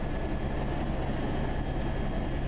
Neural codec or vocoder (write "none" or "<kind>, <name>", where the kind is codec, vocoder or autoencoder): none